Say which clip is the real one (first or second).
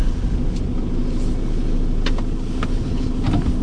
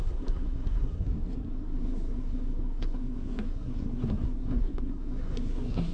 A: first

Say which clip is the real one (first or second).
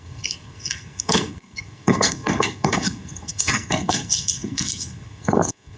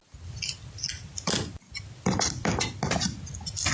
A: second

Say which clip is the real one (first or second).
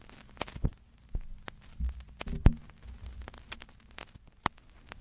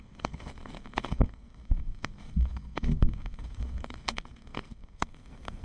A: first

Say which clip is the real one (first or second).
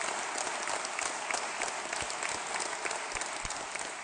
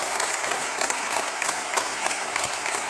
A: first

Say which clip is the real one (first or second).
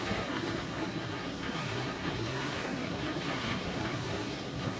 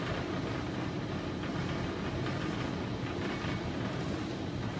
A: second